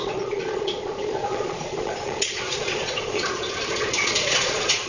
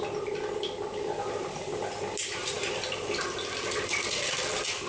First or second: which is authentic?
second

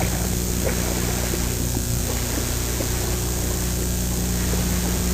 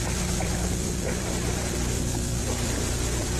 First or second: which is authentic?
first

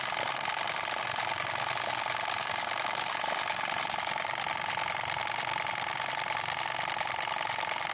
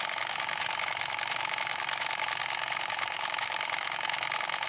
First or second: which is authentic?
first